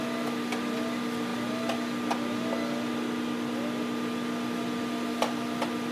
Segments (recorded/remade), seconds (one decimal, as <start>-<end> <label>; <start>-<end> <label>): 0.0-5.9 recorded